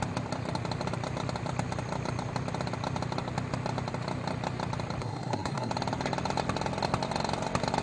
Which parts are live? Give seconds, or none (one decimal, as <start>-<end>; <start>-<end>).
0.0-5.0; 5.7-7.8